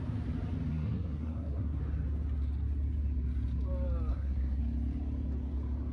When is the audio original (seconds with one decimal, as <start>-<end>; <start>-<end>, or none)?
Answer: 0.0-0.7; 1.8-4.1; 4.6-5.9